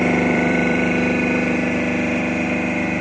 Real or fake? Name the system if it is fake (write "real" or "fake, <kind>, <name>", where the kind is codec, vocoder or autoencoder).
fake, vocoder, BigVGAN v2